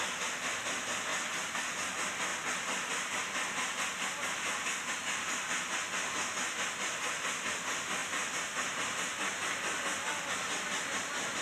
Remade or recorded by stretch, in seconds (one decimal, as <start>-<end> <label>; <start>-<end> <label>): 0.0-11.4 recorded